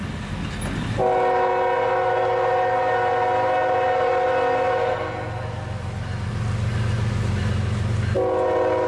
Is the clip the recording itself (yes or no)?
yes